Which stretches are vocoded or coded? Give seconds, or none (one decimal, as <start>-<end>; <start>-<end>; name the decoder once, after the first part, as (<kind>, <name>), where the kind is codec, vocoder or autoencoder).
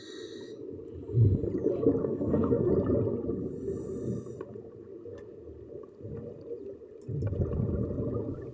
2.0-2.7 (codec, SNAC)